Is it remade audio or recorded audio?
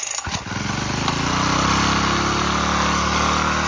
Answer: recorded